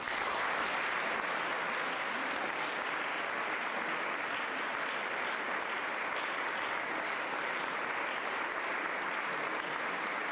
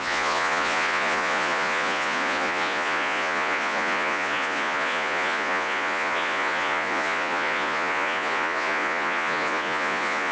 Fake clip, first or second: second